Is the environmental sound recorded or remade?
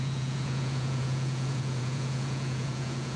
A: remade